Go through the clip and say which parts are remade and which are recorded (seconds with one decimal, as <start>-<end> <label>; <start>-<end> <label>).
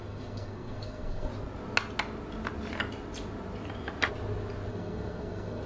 0.0-1.3 remade; 1.3-4.7 recorded; 4.7-5.7 remade